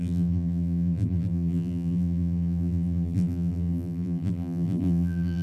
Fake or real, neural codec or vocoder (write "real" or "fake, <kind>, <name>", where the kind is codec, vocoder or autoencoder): fake, vocoder, BigVGAN v2